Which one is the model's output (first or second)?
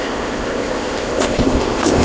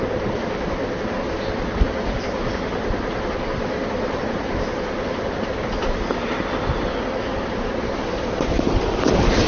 first